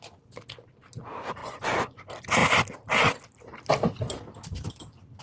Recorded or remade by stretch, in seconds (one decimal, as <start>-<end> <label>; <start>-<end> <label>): 0.0-1.4 recorded; 1.4-2.0 remade; 2.0-5.2 recorded